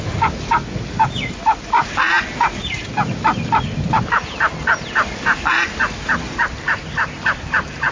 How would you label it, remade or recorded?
recorded